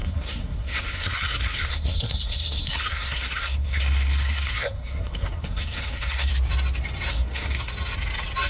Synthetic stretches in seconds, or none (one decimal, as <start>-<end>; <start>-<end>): 0.0-6.3; 7.1-7.7